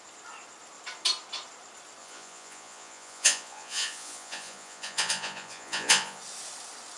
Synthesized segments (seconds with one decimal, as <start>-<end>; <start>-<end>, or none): 2.0-6.2